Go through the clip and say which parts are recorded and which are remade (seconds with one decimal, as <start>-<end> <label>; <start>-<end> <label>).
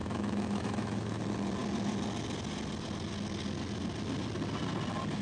0.0-1.2 remade; 1.2-5.2 recorded